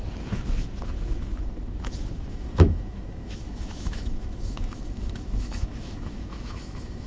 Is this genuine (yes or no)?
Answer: no